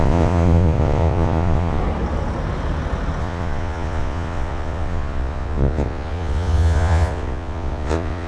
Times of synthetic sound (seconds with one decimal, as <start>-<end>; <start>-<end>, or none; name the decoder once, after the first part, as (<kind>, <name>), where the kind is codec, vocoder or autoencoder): 0.0-1.8 (vocoder, Vocos); 3.2-8.3